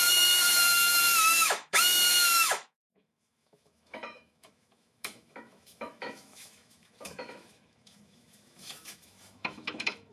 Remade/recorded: remade